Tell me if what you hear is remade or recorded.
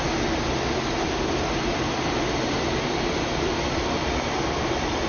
recorded